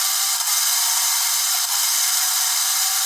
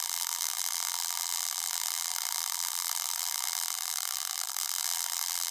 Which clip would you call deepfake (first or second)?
second